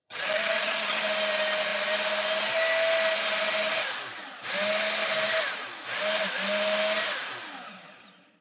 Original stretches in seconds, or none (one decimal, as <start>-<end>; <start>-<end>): 1.0-8.4